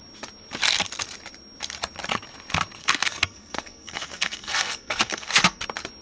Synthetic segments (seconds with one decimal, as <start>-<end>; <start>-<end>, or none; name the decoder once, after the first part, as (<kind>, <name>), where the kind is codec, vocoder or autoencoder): 2.8-5.6 (codec, SNAC)